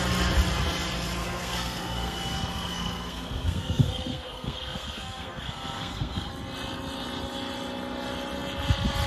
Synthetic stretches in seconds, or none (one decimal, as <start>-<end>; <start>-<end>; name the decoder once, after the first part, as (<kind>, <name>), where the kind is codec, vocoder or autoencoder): 1.2-6.3 (codec, SNAC)